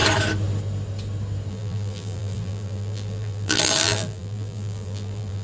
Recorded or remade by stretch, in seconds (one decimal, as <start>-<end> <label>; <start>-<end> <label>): 0.0-1.5 recorded; 1.5-5.4 remade